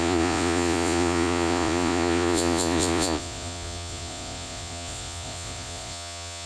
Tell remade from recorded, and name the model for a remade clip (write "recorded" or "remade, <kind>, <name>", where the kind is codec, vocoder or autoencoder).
remade, vocoder, Vocos